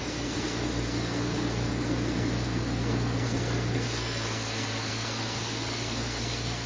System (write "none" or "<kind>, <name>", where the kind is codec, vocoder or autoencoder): codec, SNAC